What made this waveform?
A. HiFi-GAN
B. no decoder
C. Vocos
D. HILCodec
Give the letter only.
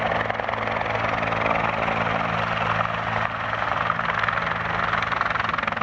B